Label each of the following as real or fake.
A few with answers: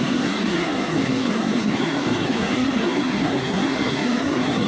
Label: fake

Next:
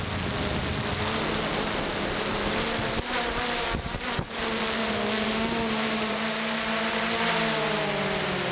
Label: real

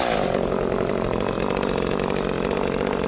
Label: real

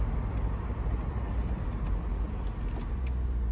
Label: real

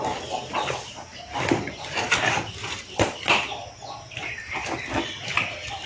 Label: real